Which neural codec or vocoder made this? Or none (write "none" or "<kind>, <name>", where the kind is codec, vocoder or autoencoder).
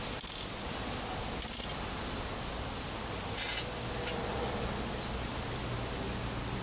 none